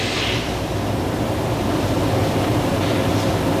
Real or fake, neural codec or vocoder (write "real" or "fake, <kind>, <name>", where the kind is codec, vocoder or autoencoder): real